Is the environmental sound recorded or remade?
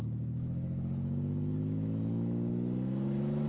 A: remade